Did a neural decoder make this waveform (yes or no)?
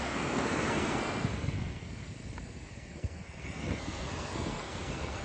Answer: yes